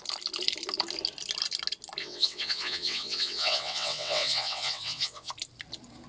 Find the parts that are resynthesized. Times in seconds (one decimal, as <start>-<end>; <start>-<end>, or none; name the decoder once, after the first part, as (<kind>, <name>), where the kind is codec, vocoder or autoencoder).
2.0-5.3 (vocoder, WaveNeXt)